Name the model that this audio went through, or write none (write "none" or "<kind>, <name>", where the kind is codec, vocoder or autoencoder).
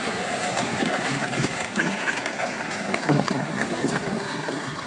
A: codec, SNAC